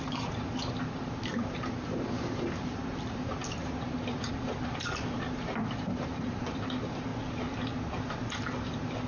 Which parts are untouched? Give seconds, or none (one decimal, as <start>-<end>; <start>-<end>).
3.6-4.1; 7.1-8.3